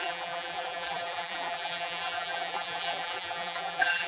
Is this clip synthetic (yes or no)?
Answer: yes